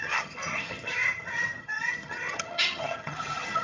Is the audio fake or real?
fake